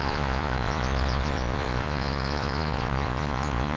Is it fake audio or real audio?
fake